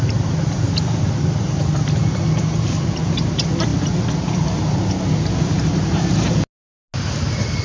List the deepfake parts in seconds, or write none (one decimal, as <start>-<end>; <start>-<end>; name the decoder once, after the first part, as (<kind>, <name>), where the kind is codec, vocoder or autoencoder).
none